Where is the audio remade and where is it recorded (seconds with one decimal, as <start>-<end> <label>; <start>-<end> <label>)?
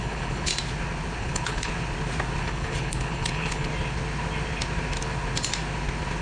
0.0-0.5 remade; 0.5-1.2 recorded; 1.2-1.7 remade; 1.7-2.4 recorded; 2.4-3.7 remade; 3.7-6.2 recorded